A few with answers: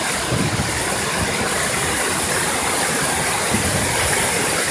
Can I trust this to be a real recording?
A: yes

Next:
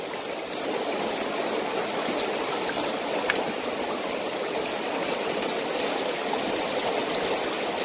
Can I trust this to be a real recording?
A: yes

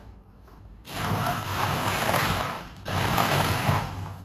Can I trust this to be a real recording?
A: no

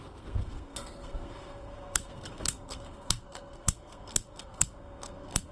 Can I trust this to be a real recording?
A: no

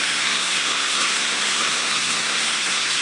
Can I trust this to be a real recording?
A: no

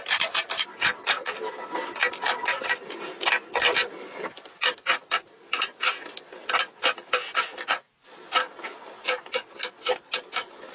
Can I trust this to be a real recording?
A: yes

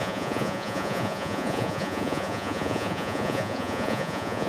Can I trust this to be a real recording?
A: no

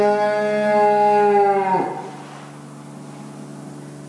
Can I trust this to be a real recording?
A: yes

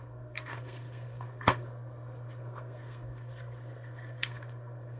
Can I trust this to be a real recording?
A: no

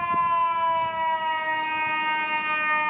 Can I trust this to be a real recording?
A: yes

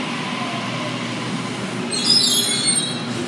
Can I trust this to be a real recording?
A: yes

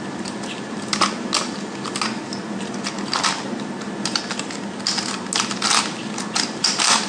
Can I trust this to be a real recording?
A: yes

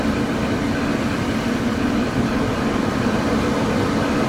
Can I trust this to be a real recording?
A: yes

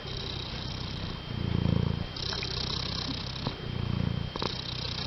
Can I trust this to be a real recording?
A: no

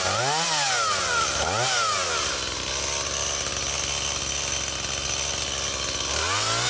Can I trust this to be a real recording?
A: yes